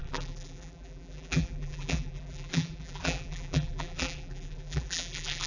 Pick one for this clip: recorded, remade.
remade